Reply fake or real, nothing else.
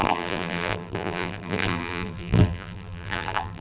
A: fake